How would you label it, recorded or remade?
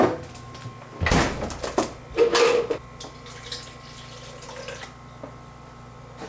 recorded